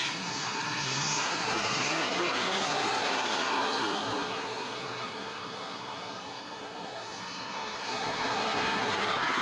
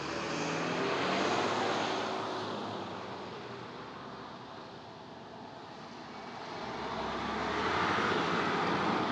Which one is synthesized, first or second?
first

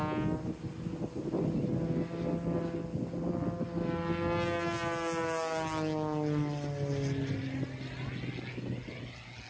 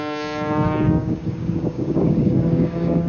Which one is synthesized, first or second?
second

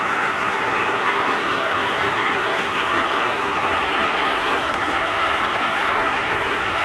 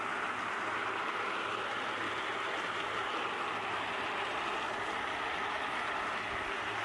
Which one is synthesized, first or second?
first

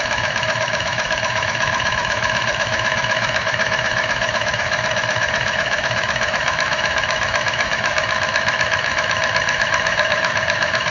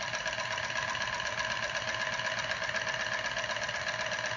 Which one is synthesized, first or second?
first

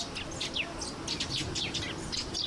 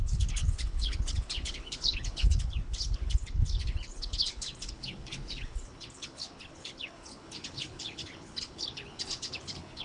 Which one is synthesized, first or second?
second